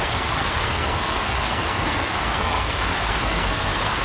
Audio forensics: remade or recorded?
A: remade